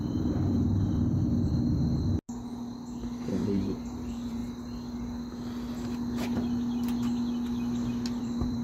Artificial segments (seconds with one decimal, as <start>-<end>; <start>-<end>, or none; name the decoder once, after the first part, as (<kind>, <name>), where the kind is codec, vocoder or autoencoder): 0.0-0.7 (vocoder, BigVGAN v2); 3.3-4.4; 8.2-8.6